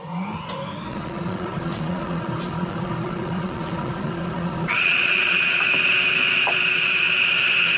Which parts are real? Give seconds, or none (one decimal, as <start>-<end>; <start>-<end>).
0.0-0.9; 5.6-7.8